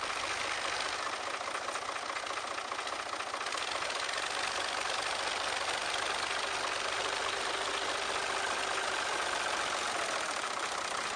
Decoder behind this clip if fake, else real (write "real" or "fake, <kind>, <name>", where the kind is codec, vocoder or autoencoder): real